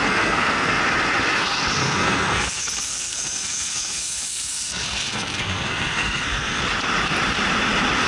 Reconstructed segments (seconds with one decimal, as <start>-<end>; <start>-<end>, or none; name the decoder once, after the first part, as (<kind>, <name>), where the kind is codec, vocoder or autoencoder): 0.0-0.8 (codec, SNAC); 1.8-6.6